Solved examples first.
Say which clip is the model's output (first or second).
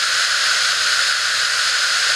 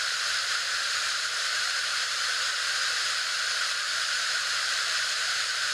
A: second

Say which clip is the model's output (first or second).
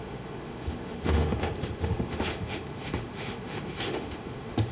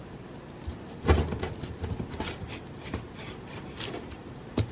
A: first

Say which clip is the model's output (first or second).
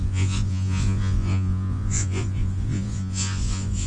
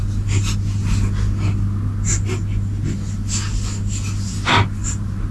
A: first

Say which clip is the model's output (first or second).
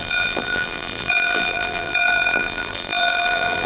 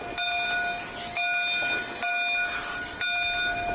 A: first